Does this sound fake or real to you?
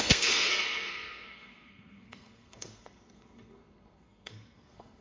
fake